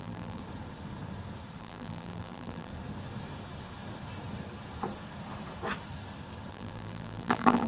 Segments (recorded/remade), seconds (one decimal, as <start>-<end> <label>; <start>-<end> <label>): 0.0-0.4 remade; 0.4-1.6 recorded; 1.6-2.7 remade; 2.7-6.5 recorded; 6.5-7.7 remade